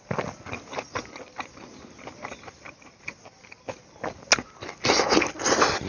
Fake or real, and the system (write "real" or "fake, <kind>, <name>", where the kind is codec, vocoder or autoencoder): real